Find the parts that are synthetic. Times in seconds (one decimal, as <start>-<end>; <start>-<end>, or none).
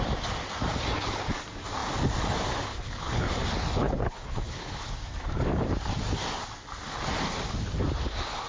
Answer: 2.7-3.3; 3.8-4.9